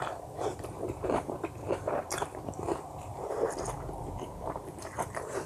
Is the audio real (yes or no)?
no